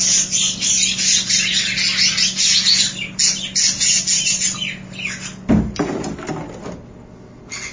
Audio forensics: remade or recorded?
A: recorded